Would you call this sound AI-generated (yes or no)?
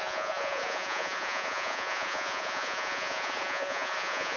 yes